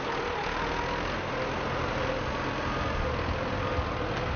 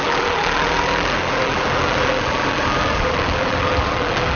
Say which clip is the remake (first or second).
second